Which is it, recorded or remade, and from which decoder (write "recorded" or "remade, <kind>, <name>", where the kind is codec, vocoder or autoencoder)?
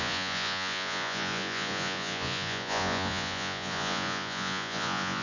remade, vocoder, Vocos